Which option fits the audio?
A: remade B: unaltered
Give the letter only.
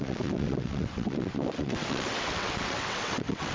A